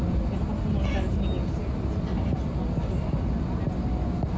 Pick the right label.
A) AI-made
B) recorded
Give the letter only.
B